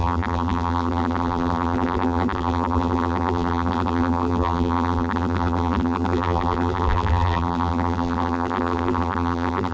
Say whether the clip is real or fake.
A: fake